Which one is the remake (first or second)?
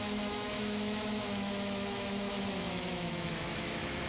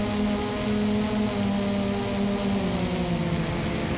first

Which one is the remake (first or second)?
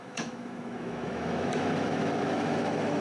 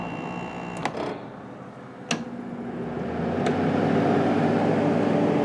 first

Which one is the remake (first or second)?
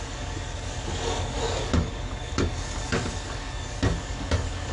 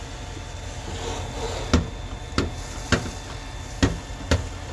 first